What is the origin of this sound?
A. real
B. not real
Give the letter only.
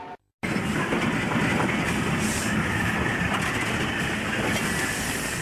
A